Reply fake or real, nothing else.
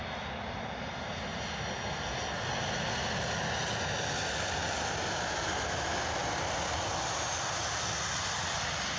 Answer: real